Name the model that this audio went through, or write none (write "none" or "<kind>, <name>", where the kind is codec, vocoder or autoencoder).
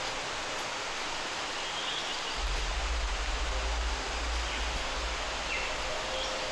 none